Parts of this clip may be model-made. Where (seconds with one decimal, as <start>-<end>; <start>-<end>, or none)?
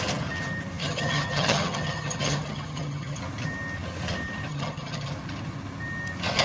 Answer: 0.8-3.2; 4.5-5.1